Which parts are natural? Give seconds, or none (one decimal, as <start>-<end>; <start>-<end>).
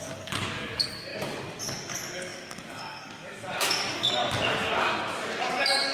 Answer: 4.2-4.9